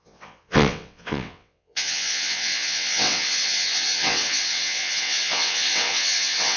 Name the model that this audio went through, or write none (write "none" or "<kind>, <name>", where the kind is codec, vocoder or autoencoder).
vocoder, WaveNeXt